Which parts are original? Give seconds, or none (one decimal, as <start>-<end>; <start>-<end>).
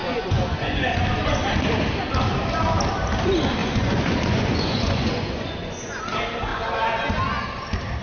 0.9-3.6; 6.0-6.5; 7.1-8.0